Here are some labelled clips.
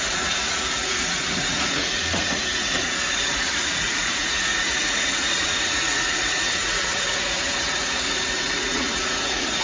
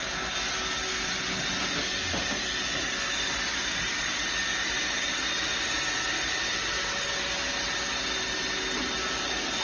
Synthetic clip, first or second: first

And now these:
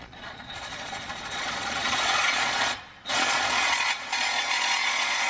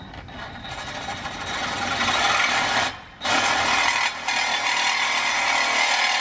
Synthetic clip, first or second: first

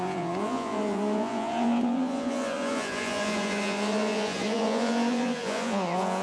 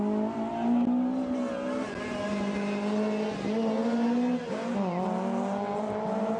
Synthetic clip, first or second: first